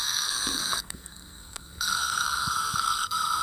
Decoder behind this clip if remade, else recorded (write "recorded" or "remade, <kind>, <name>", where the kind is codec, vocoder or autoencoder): remade, codec, SNAC